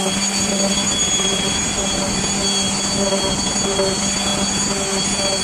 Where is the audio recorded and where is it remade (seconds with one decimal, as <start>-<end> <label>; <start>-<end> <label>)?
0.0-1.0 recorded; 1.0-2.2 remade; 2.2-5.4 recorded